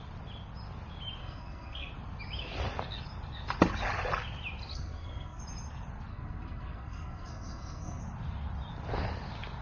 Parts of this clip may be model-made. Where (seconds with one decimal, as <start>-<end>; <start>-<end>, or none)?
1.2-1.9; 4.7-5.4; 6.1-8.0